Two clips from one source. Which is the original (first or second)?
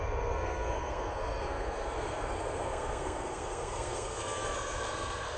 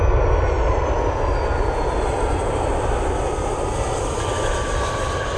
second